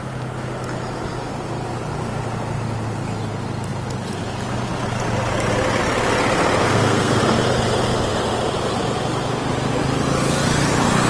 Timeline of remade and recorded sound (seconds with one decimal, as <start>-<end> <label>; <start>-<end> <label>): 0.0-6.6 recorded; 6.6-7.2 remade; 7.2-11.1 recorded